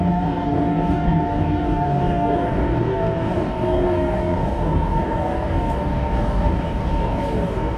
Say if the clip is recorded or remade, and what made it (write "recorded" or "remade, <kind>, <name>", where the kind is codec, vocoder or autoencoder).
remade, codec, DAC